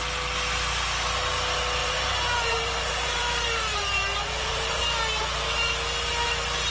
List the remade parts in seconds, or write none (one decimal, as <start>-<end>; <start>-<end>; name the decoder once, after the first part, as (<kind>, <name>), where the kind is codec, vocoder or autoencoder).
1.8-4.8 (vocoder, BigVGAN v2)